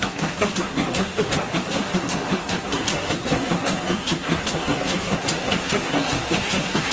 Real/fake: fake